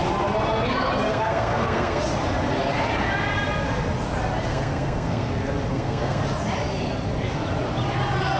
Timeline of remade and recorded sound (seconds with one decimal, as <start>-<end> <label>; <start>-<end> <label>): 0.0-1.1 recorded; 1.1-2.0 remade; 2.0-4.5 recorded; 4.5-5.3 remade; 5.3-5.7 recorded; 5.7-6.2 remade; 6.2-8.4 recorded

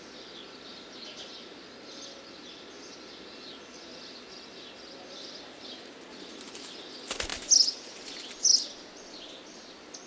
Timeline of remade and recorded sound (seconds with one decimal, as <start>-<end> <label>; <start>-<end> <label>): 0.0-10.1 recorded

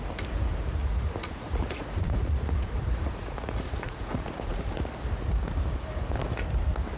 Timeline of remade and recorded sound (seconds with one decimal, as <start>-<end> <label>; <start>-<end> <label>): 0.0-0.8 recorded; 0.8-4.9 remade; 4.9-7.0 recorded

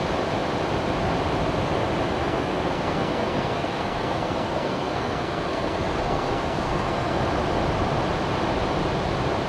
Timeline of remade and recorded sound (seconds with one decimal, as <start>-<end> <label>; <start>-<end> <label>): 0.0-2.2 recorded; 2.2-7.2 remade; 7.2-9.5 recorded

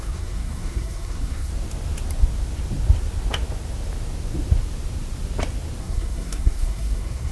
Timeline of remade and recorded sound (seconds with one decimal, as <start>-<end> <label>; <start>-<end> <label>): 0.0-1.5 remade; 1.5-5.8 recorded; 5.8-7.3 remade

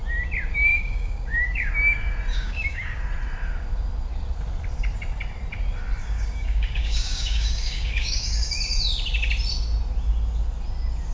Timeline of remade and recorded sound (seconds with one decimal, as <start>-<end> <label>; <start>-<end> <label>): 0.0-0.7 recorded; 0.7-1.7 remade; 1.7-2.3 recorded; 2.3-3.0 remade; 3.0-6.0 recorded; 6.0-8.5 remade; 8.5-11.1 recorded